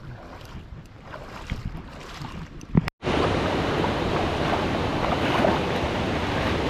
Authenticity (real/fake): real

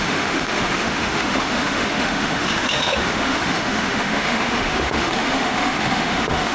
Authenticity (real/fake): fake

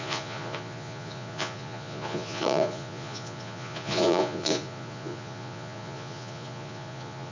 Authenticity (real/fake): fake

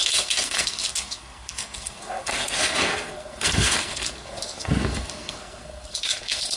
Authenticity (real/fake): fake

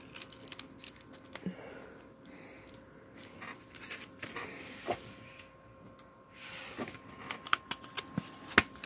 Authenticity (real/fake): real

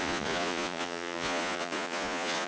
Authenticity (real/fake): fake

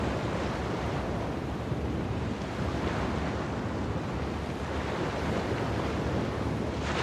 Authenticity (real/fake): real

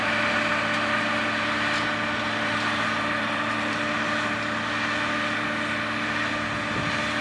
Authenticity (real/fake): real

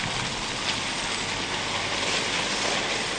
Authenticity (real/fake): real